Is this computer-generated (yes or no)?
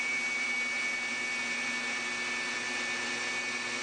no